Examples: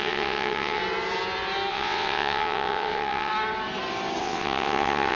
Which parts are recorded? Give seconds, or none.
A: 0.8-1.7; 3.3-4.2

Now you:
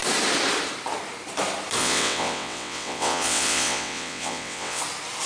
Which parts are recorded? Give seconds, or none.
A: 0.0-1.8; 4.8-5.3

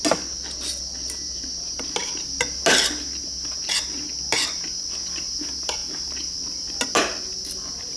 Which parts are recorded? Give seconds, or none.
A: 0.0-8.0

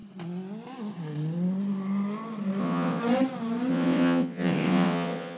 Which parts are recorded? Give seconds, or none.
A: 0.0-2.6; 3.0-3.7

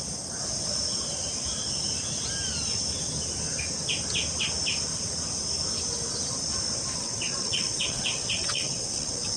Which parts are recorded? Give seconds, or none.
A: 0.0-7.0